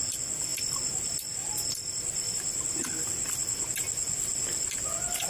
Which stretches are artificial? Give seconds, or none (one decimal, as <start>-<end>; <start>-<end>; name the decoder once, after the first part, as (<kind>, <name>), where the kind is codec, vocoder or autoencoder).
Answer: none